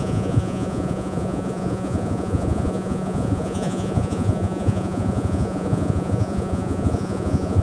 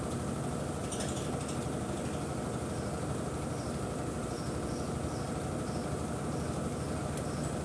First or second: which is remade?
first